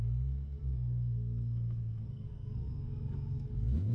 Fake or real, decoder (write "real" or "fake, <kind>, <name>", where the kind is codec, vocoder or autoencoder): fake, codec, SNAC